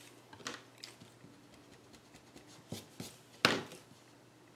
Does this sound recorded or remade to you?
recorded